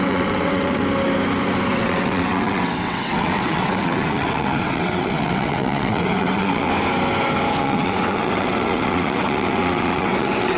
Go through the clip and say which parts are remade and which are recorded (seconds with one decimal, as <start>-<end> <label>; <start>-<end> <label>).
0.0-0.8 remade; 0.8-1.7 recorded; 1.7-6.7 remade; 6.7-7.6 recorded; 7.6-10.6 remade